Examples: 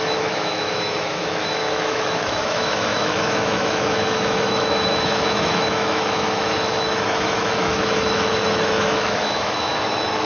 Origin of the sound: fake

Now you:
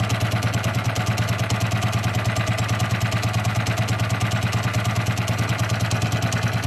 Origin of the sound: real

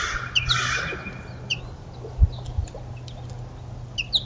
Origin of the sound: real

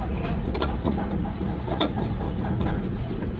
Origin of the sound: fake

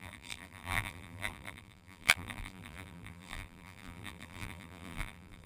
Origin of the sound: fake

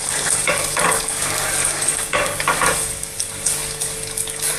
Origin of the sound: fake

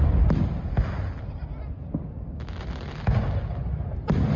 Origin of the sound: real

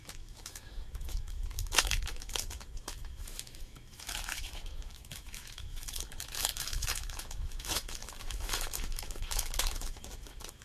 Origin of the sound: fake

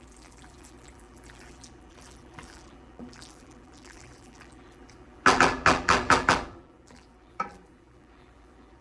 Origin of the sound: fake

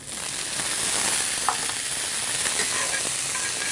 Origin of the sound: real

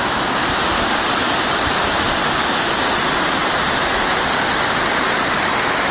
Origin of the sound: real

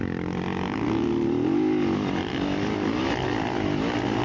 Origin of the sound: real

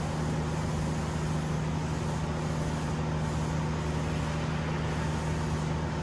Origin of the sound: real